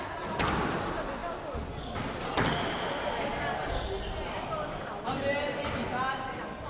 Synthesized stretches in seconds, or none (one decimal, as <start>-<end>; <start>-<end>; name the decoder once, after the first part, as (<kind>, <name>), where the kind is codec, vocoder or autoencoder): none